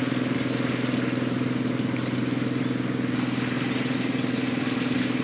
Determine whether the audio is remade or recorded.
recorded